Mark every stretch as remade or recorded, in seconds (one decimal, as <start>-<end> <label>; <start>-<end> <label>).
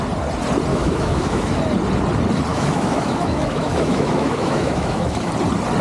0.0-0.7 recorded; 0.7-1.6 remade; 1.6-2.5 recorded; 2.5-5.3 remade; 5.3-5.8 recorded